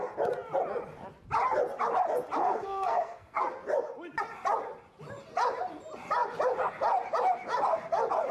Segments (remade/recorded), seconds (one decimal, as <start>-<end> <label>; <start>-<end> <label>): 0.0-2.4 recorded; 2.4-3.4 remade; 3.4-8.3 recorded